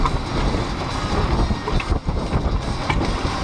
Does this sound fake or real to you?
real